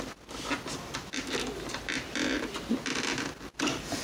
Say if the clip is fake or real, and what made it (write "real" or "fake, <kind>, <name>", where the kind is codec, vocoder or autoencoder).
real